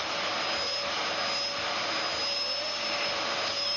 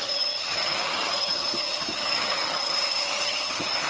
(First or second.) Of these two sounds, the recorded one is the first